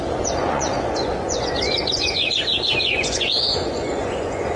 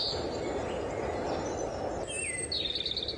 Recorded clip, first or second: second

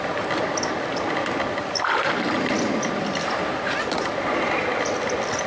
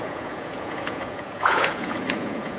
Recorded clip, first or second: first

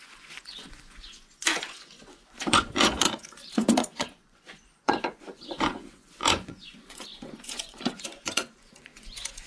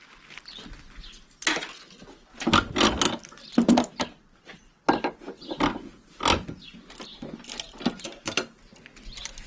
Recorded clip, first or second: second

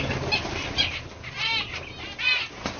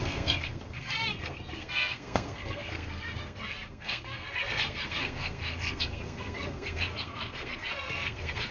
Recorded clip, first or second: first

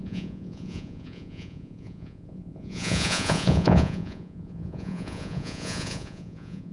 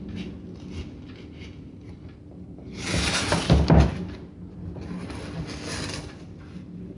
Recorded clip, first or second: second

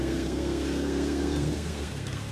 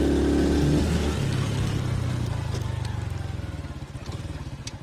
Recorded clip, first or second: second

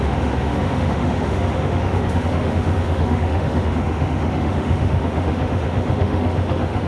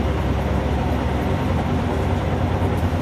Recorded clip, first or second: second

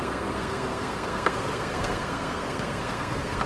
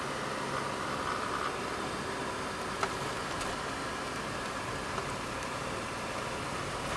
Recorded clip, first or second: second